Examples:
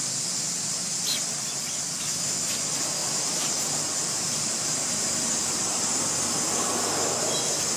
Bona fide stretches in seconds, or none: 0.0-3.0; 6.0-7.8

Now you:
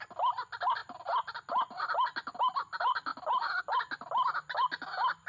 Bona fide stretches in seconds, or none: 0.0-3.1; 3.6-5.3